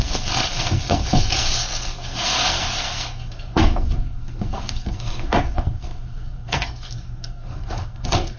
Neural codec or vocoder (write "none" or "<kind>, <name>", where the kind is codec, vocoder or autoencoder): codec, SNAC